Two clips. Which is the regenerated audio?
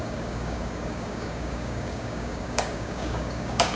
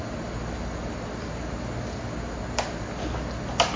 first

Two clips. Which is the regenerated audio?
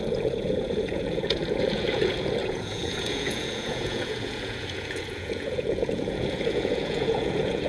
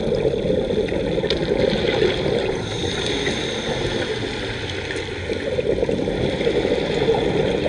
first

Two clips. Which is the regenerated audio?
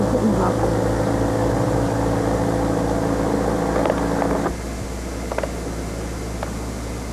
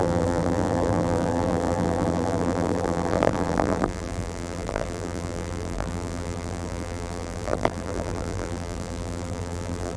second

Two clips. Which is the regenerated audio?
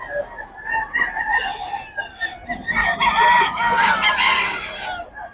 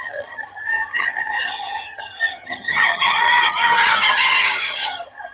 second